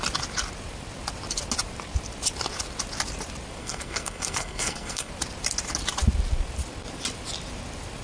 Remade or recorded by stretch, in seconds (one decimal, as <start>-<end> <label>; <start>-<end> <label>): 0.0-3.6 recorded; 3.6-5.1 remade; 5.1-8.0 recorded